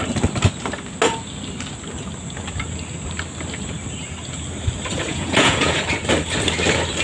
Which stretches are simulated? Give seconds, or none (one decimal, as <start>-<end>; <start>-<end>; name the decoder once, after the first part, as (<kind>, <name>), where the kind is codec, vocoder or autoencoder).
5.1-5.8 (vocoder, Vocos)